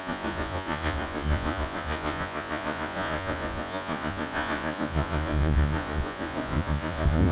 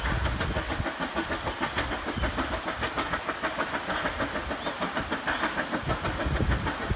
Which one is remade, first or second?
first